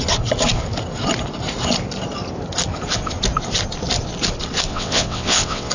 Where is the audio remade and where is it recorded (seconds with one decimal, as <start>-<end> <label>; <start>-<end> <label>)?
0.0-4.7 recorded; 4.7-5.7 remade